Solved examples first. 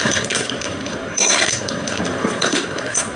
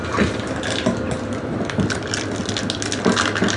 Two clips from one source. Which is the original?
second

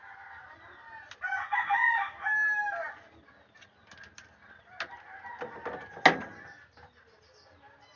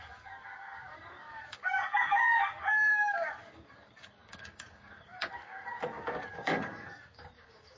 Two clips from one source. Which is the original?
first